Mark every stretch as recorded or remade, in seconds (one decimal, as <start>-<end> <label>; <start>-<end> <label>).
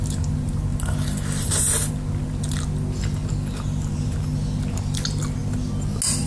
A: 0.0-6.3 recorded